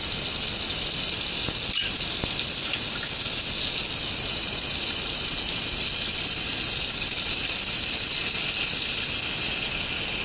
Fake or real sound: real